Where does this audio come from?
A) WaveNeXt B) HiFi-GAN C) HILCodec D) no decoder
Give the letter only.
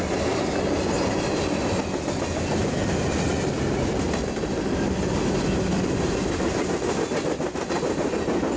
D